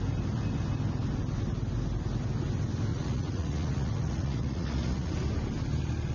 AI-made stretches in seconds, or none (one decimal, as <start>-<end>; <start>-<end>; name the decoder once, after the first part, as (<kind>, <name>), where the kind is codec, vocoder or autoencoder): 2.9-5.1 (vocoder, Vocos)